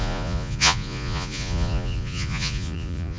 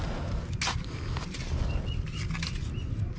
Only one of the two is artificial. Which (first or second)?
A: first